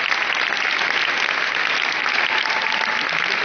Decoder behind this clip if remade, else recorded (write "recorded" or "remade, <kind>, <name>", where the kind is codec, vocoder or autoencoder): recorded